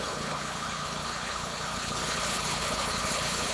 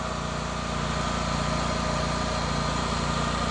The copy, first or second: first